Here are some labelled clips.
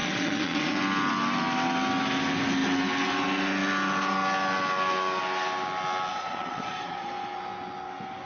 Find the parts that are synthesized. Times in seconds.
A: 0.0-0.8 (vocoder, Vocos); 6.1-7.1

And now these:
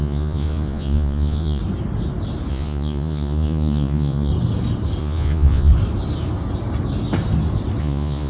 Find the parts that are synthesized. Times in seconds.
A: 0.0-1.6 (vocoder, Vocos); 2.5-4.3; 5.0-5.7; 7.8-8.3

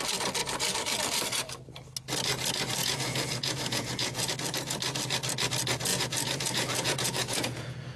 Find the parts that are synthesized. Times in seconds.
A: 2.8-4.3 (vocoder, Vocos); 5.9-8.0